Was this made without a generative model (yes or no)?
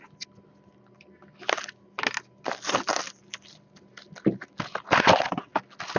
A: yes